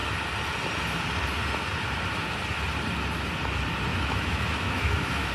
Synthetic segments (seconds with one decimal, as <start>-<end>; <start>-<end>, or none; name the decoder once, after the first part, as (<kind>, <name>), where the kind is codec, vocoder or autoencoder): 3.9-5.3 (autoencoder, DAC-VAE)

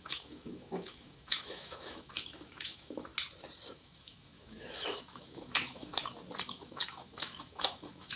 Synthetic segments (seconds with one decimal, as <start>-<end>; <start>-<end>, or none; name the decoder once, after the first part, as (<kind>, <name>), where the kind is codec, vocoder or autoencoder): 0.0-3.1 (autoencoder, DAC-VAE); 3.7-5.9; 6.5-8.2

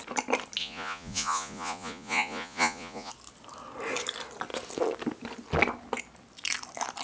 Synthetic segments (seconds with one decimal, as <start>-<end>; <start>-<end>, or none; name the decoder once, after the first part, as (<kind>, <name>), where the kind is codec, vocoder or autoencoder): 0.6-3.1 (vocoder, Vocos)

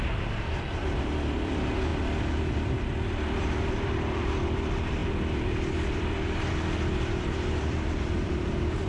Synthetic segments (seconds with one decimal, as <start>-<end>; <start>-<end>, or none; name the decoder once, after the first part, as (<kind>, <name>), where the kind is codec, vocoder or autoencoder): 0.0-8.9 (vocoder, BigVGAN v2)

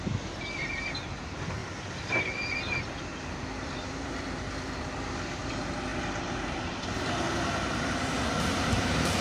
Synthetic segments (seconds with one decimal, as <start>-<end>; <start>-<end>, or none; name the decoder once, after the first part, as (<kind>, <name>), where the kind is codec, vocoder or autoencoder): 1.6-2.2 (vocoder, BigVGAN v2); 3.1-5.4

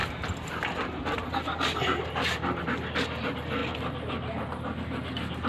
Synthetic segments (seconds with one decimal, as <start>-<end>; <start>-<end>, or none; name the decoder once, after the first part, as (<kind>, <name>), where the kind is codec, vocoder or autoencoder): 0.0-3.6 (vocoder, BigVGAN v2)

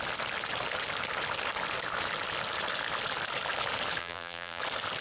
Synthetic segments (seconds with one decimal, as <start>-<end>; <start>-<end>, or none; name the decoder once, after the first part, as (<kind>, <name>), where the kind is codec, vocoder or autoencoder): 4.0-4.6 (vocoder, BigVGAN v2)

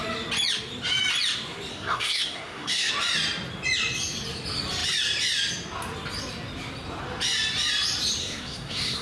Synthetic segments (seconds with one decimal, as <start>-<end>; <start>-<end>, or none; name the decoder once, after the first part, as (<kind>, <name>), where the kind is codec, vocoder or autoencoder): 1.7-2.9 (codec, SNAC); 8.2-9.0